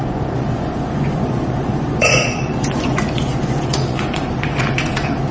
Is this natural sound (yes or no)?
no